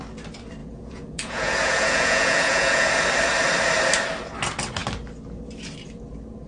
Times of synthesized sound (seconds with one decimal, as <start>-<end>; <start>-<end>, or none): 0.6-2.9